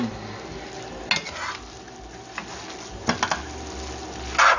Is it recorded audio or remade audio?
recorded